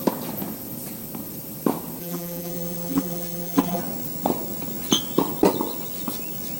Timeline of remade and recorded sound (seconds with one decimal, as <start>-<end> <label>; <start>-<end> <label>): 0.0-2.0 recorded; 2.0-3.8 remade; 3.8-6.6 recorded